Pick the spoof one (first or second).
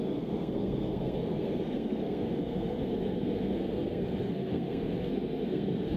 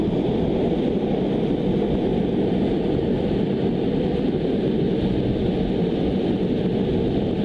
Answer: first